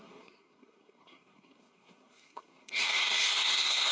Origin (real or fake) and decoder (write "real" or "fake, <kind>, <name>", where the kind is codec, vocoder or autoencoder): fake, codec, SNAC